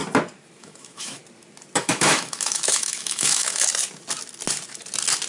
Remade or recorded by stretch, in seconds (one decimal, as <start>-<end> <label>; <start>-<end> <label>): 0.0-0.6 recorded; 0.6-1.2 remade; 1.2-1.8 recorded; 1.8-3.7 remade; 3.7-5.3 recorded